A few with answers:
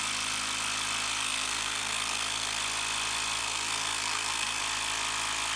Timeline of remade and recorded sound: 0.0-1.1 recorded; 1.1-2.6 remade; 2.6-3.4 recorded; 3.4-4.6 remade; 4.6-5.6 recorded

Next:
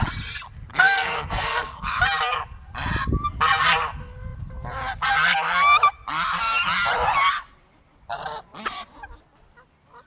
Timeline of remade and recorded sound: 0.0-0.7 recorded; 0.7-2.0 remade; 2.0-10.1 recorded